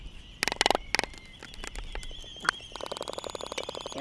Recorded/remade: recorded